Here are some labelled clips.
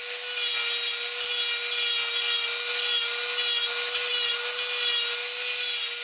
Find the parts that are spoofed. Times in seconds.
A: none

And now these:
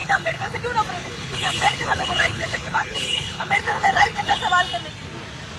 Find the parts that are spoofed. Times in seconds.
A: 0.0-0.6 (codec, HILCodec); 1.0-4.4

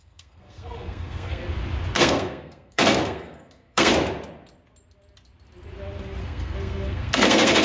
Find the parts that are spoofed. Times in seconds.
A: 0.0-1.4 (codec, SNAC); 2.0-3.9; 6.2-7.6

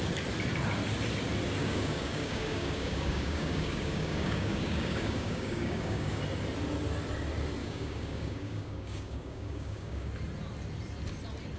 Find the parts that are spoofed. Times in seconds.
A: 1.6-6.2 (codec, DAC); 7.6-10.1